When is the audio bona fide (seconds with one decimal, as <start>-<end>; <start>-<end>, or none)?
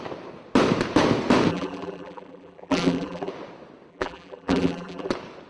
0.0-1.5; 3.3-3.9; 5.1-5.5